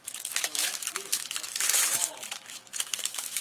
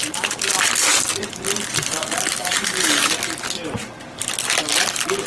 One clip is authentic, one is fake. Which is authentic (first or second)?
second